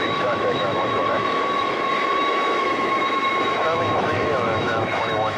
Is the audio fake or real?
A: fake